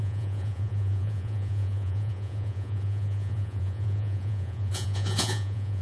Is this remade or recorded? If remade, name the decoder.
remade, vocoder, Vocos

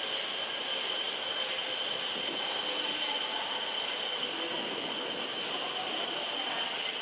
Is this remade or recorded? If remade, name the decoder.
recorded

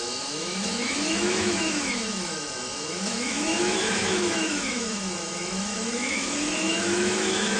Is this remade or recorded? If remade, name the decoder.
remade, autoencoder, DAC-VAE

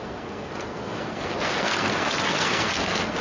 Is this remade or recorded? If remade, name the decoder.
remade, codec, SNAC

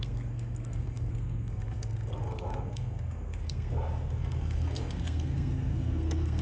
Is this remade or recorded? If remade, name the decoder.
remade, codec, SNAC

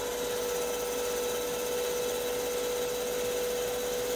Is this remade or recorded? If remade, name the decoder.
recorded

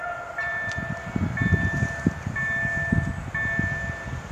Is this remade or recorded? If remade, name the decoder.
recorded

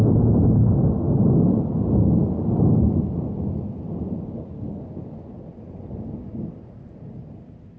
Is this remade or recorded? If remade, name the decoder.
remade, vocoder, BigVGAN v2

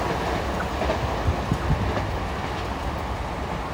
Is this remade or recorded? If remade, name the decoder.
recorded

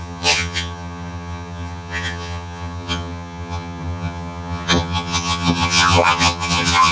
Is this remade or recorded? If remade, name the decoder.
remade, vocoder, HiFi-GAN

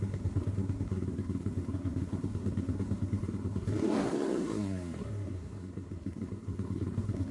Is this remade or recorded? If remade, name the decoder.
remade, codec, SNAC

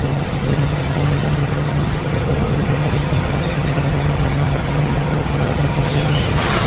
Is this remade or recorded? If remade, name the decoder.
remade, vocoder, HiFi-GAN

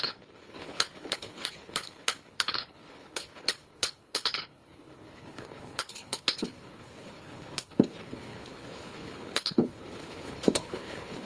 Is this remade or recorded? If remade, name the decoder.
remade, codec, HILCodec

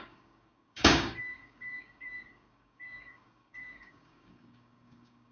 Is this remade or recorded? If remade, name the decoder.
remade, codec, DAC